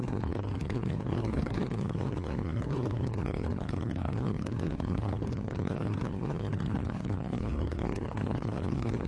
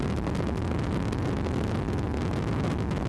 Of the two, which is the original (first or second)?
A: second